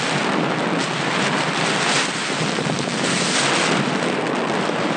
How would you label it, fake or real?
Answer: real